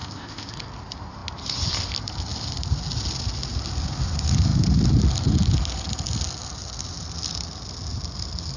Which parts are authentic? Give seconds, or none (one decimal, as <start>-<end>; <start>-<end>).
0.5-8.6